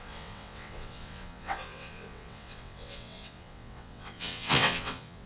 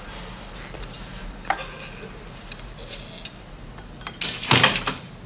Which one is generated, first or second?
first